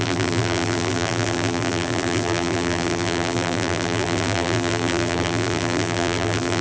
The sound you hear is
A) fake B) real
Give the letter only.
A